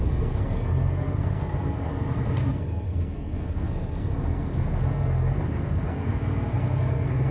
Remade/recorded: remade